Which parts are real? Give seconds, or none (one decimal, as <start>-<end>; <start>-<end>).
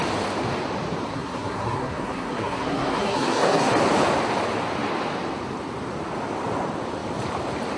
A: 0.0-1.1; 3.7-7.8